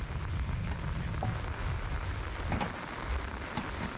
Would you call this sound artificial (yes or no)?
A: no